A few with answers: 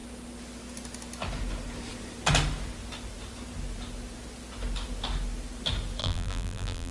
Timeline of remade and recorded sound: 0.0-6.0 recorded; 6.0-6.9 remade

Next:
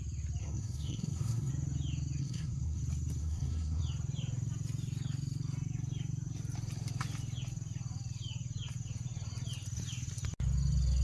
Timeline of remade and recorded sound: 0.0-0.4 recorded; 0.4-1.5 remade; 1.5-2.2 recorded; 2.2-2.8 remade; 2.8-3.2 recorded; 3.2-3.8 remade; 3.8-11.0 recorded

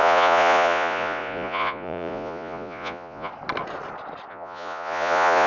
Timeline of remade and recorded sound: 0.0-3.3 remade; 3.3-4.3 recorded; 4.3-5.5 remade

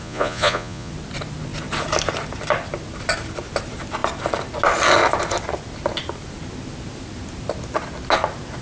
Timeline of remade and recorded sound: 0.0-0.9 remade; 0.9-8.6 recorded

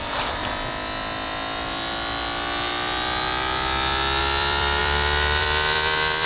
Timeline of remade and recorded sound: 0.0-0.4 remade; 0.4-4.2 recorded; 4.2-6.3 remade

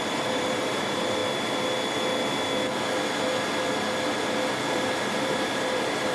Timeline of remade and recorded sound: 0.0-1.2 remade; 1.2-4.7 recorded; 4.7-6.1 remade

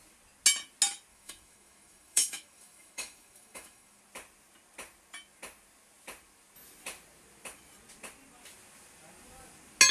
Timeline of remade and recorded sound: 0.0-1.1 recorded; 1.1-4.0 remade; 4.0-9.9 recorded